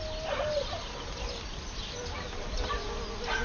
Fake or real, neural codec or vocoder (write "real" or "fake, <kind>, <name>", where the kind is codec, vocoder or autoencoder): real